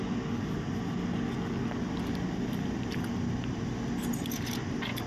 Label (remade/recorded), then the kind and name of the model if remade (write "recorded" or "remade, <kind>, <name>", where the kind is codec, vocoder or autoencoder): recorded